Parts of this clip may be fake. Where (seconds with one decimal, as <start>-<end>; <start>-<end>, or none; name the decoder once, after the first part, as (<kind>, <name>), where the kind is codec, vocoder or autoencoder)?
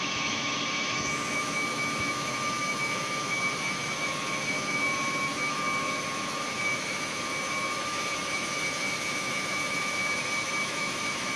0.0-11.4 (autoencoder, DAC-VAE)